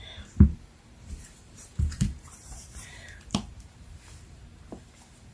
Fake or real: fake